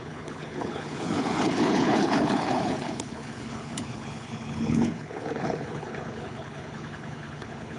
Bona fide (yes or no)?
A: no